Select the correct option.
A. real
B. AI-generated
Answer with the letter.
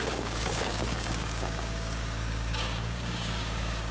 B